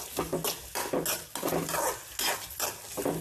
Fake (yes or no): no